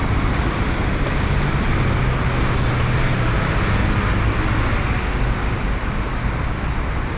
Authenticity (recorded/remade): recorded